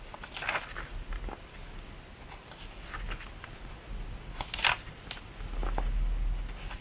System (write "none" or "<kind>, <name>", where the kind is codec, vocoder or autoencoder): none